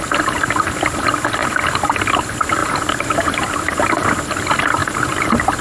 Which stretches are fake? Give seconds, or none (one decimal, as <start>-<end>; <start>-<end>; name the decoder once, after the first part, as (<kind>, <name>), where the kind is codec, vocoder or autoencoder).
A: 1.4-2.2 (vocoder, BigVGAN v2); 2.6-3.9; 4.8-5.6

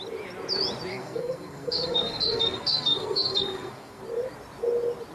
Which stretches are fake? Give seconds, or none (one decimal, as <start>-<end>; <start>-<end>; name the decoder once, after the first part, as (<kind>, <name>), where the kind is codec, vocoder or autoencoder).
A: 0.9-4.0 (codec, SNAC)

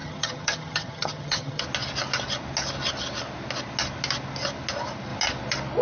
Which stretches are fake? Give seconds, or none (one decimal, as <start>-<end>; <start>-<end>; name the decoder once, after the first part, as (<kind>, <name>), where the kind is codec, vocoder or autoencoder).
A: 0.0-1.6 (vocoder, HiFi-GAN)

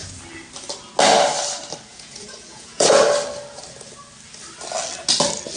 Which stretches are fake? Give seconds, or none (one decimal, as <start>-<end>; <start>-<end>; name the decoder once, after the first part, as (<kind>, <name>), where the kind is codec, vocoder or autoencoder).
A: 1.9-3.0 (vocoder, Vocos)